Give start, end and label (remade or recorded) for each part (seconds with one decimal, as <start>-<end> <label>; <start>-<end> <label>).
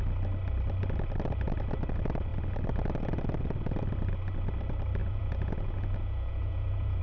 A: 0.0-5.0 recorded; 5.0-7.0 remade